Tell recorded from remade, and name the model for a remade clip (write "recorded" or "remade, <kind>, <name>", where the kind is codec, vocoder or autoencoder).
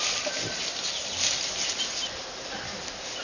recorded